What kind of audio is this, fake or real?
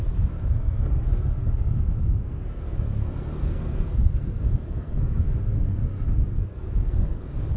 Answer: fake